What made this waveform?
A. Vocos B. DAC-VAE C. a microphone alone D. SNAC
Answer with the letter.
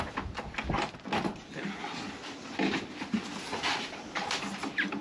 C